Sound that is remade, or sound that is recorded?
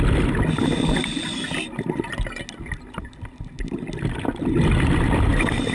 recorded